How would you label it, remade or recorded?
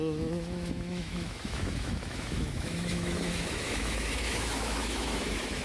remade